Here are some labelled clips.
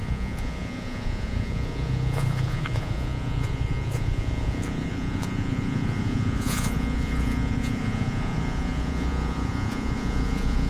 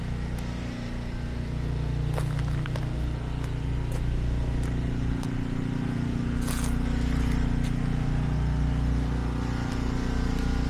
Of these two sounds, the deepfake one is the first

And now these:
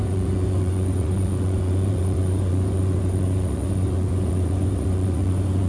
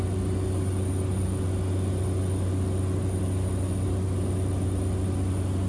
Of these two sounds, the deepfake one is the first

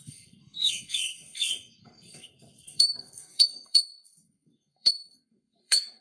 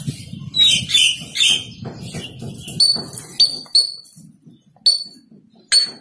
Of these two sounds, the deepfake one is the first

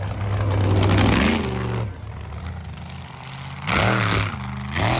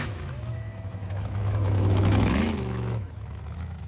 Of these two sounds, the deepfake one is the second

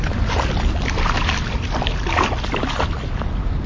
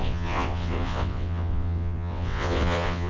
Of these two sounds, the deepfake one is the second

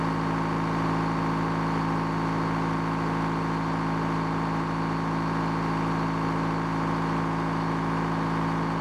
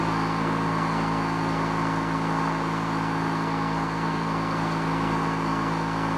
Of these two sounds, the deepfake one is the second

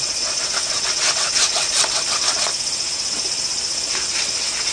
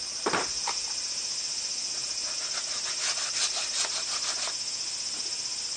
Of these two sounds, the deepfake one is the first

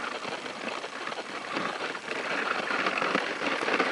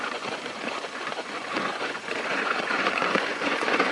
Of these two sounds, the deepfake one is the second